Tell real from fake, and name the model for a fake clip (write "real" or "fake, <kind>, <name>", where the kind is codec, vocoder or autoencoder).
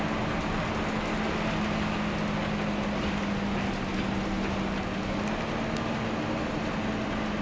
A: real